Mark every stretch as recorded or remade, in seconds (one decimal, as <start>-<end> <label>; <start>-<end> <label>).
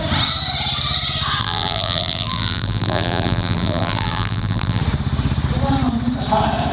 0.0-1.4 recorded; 1.4-4.8 remade; 4.8-6.7 recorded